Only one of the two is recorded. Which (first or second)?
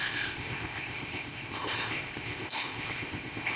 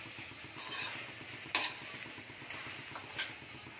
second